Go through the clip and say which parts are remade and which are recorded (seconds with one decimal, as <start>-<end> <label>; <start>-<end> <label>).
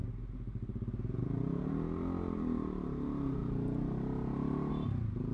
0.0-5.3 recorded